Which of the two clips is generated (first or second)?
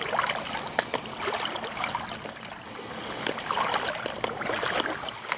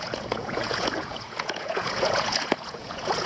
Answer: second